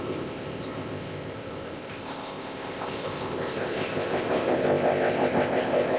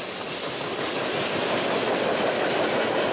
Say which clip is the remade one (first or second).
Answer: first